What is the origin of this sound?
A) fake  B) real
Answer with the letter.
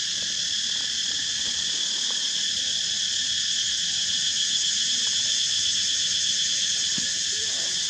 B